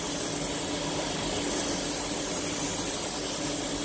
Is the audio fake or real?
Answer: real